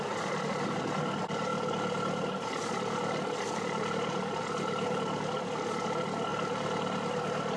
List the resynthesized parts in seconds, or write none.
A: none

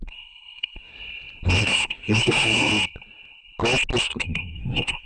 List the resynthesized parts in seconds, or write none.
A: 0.0-0.9 (codec, SNAC); 1.6-2.7; 4.0-5.1

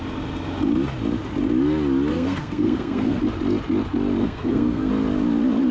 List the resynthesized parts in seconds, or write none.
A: 2.1-3.2 (codec, SNAC); 4.2-4.9

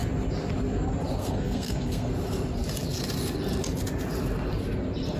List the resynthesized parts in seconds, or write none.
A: 1.2-2.1 (codec, SNAC)

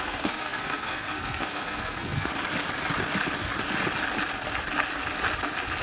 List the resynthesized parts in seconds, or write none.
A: 0.0-2.3 (codec, SNAC)

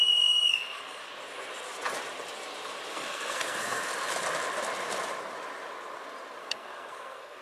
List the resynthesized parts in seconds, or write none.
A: 0.0-1.0 (codec, SNAC); 2.9-3.9; 6.4-7.4

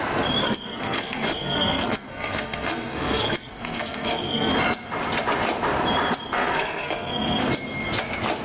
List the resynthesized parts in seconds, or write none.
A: 0.4-4.5 (codec, SNAC); 6.3-7.4

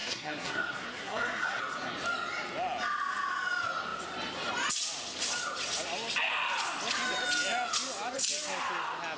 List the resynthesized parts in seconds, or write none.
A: 0.0-1.6 (codec, SNAC)